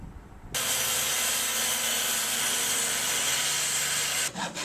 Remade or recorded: recorded